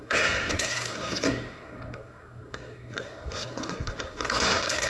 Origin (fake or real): fake